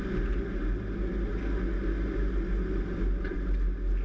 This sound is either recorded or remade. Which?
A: recorded